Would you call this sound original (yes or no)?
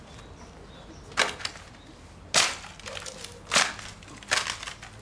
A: yes